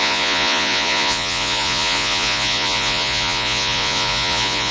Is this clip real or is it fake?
fake